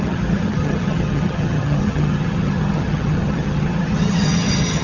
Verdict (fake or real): fake